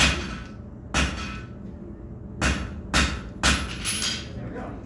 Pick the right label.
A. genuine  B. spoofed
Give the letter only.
A